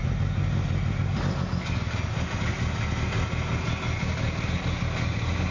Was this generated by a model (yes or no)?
no